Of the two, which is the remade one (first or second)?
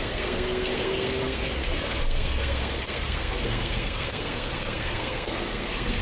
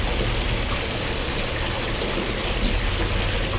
first